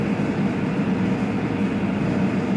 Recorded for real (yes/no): yes